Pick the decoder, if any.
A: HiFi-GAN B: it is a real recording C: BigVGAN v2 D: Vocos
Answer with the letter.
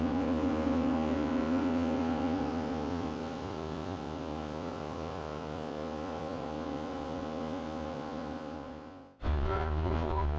D